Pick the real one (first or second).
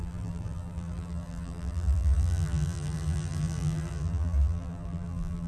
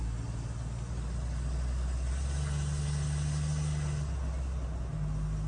second